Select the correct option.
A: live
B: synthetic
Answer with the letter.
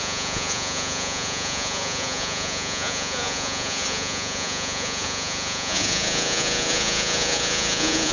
B